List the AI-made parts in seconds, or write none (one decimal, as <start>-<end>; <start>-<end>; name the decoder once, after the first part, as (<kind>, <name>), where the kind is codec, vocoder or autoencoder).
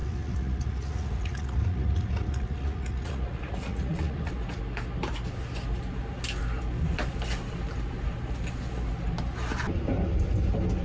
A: 0.0-4.3 (vocoder, Vocos)